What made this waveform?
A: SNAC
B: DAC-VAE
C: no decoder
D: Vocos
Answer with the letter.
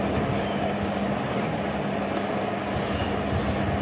C